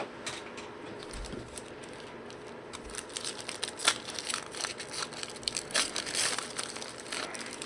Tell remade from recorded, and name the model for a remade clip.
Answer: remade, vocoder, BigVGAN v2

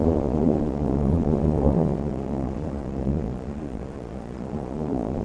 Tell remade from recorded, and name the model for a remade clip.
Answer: remade, vocoder, Vocos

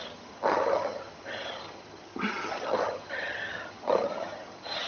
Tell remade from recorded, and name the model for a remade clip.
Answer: remade, vocoder, HiFi-GAN